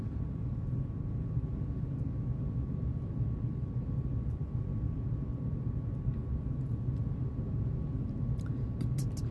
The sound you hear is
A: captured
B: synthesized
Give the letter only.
A